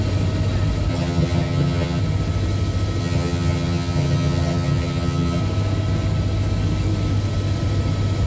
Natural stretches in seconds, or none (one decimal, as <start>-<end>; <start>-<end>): 0.0-0.9; 2.0-3.0; 5.4-8.3